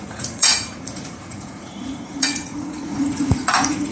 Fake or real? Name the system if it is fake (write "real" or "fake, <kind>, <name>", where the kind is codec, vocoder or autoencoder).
fake, vocoder, Vocos